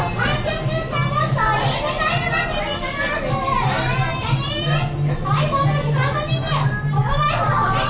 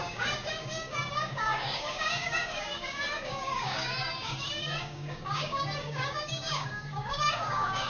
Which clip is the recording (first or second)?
first